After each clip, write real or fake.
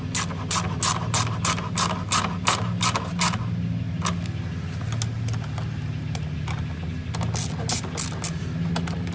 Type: real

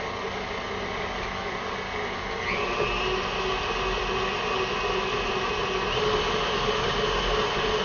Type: real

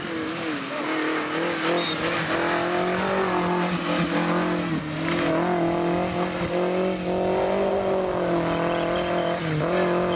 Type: real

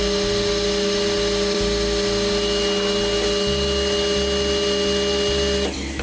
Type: real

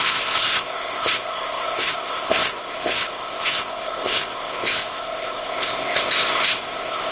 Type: fake